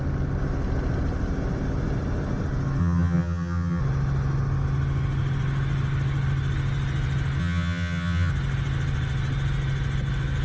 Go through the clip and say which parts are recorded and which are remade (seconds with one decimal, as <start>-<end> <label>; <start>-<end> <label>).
0.0-2.8 recorded; 2.8-3.8 remade; 3.8-7.4 recorded; 7.4-8.3 remade; 8.3-10.4 recorded